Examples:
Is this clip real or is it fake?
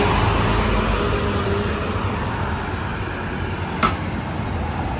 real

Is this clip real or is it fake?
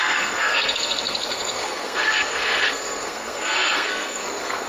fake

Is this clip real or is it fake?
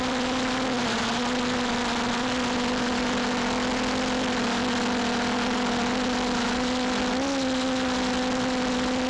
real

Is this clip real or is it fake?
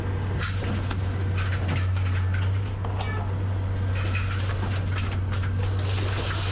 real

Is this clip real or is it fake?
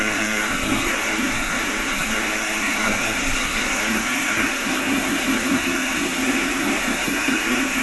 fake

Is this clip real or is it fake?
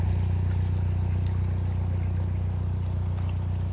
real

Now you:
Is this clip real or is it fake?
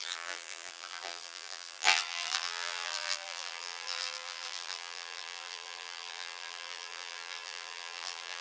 fake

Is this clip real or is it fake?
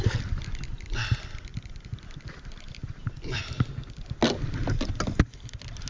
real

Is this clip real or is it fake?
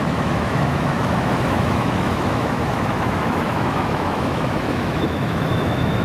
fake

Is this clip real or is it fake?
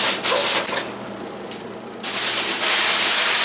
real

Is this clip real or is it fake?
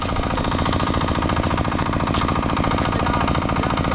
real